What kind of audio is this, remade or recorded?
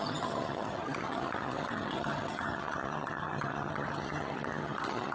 remade